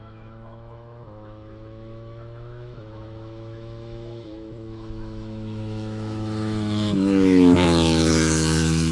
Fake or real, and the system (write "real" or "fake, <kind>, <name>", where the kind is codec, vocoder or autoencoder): fake, autoencoder, DAC-VAE